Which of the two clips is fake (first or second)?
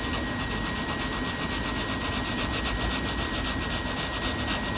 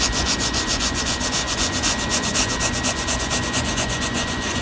second